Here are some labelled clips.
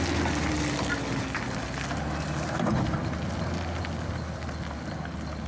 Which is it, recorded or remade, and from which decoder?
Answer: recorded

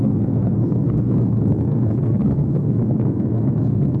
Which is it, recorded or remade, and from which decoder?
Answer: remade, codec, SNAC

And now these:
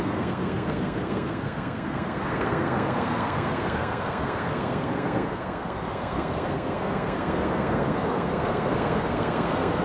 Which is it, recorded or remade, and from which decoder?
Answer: remade, codec, SNAC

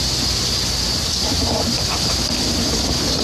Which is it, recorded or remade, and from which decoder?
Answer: recorded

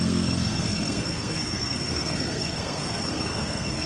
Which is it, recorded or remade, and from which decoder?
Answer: remade, codec, SNAC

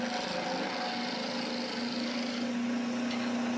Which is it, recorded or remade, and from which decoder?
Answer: recorded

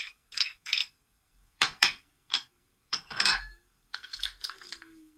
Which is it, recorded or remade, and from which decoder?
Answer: remade, codec, SNAC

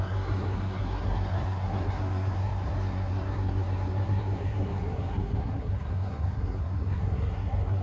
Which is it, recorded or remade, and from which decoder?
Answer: remade, codec, SNAC